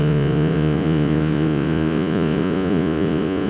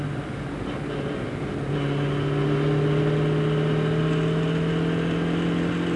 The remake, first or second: first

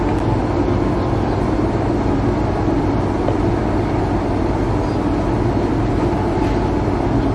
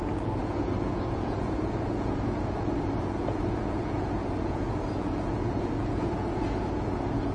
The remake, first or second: second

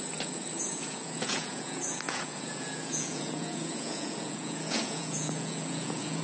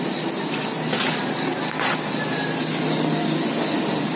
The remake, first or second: first